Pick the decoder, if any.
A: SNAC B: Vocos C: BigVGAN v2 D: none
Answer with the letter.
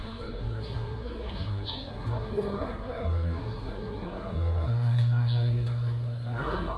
A